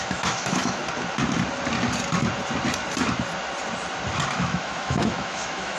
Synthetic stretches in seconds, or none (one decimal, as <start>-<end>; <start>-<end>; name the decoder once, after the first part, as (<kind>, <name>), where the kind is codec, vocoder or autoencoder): 0.0-0.8 (autoencoder, DAC-VAE); 4.3-5.8